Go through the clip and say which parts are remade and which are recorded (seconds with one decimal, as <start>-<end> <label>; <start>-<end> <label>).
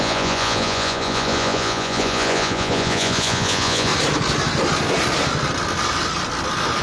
0.0-3.9 remade; 3.9-6.8 recorded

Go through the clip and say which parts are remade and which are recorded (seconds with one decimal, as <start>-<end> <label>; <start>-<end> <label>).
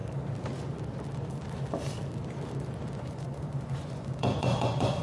0.0-3.0 recorded; 3.0-5.0 remade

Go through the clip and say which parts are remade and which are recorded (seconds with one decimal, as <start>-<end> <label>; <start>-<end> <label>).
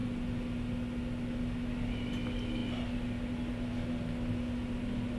0.0-5.2 recorded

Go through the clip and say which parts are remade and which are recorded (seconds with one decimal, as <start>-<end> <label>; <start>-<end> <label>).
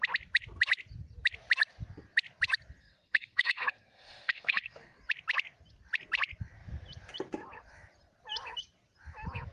0.0-2.8 recorded; 2.8-5.0 remade; 5.0-9.5 recorded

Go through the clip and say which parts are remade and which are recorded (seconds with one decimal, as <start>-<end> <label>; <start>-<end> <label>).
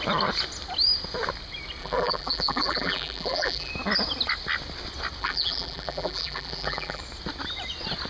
0.0-1.8 recorded; 1.8-3.7 remade; 3.7-5.2 recorded; 5.2-7.0 remade; 7.0-8.1 recorded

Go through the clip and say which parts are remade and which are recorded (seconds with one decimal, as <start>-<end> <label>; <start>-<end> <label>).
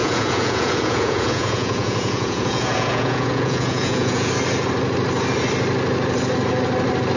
0.0-4.3 remade; 4.3-7.2 recorded